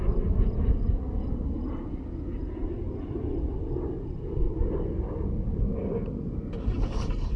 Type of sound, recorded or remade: recorded